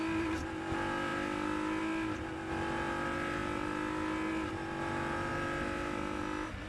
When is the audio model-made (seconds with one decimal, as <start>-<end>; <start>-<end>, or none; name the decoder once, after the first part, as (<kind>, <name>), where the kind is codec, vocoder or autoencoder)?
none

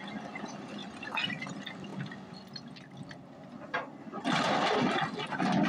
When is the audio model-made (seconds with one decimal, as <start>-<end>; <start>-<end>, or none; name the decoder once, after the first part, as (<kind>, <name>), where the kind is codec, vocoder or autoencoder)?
0.8-1.4 (vocoder, BigVGAN v2)

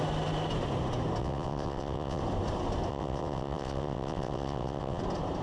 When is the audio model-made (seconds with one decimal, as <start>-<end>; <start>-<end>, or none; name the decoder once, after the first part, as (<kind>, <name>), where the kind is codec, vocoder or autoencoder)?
1.2-2.2 (vocoder, WaveNeXt); 2.9-5.0

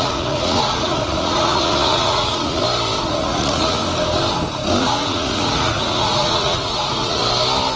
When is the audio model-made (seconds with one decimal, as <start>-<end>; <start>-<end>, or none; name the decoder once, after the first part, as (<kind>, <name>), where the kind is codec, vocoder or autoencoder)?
0.0-2.6 (vocoder, Vocos); 3.1-3.8; 4.8-7.2